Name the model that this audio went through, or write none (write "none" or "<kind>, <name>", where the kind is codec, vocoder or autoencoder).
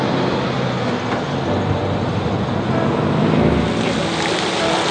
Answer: none